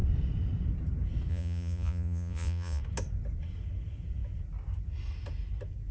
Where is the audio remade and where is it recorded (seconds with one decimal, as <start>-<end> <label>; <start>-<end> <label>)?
0.0-1.3 recorded; 1.3-2.8 remade; 2.8-5.9 recorded

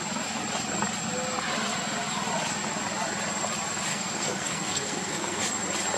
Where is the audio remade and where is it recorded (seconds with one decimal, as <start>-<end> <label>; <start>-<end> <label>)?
0.0-3.9 recorded; 3.9-5.4 remade; 5.4-6.0 recorded

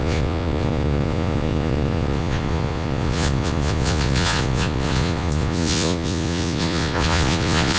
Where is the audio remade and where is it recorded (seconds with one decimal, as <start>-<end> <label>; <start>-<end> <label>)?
0.0-7.8 remade

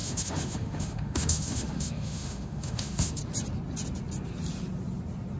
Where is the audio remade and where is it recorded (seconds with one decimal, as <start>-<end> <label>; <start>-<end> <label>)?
0.0-3.2 remade; 3.2-5.4 recorded